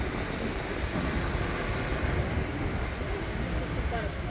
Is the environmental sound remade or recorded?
recorded